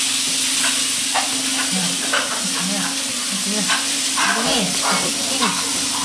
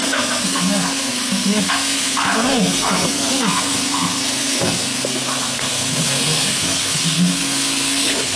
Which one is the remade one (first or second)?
second